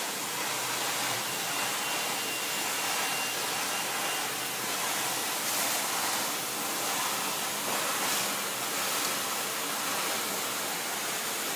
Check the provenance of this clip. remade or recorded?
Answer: recorded